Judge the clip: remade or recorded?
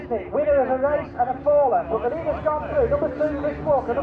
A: recorded